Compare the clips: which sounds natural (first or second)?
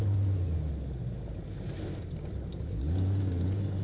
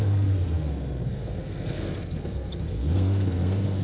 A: first